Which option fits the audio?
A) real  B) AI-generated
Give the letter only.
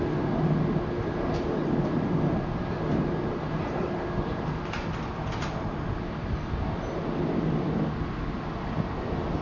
A